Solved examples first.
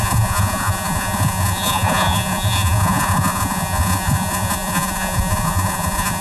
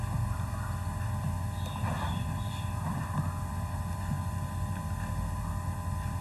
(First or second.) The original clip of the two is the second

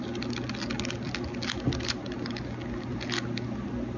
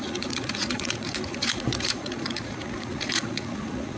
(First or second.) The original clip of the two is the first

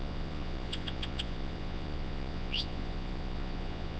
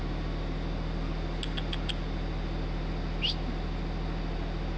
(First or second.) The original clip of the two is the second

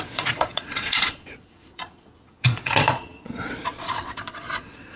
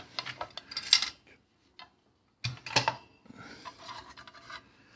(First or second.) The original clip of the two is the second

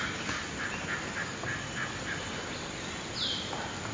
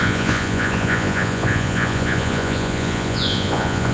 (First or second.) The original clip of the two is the first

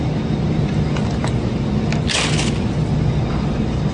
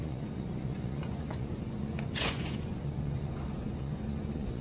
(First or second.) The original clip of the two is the first